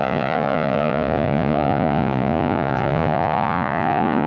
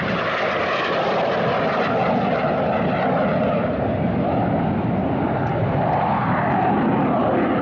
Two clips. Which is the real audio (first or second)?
second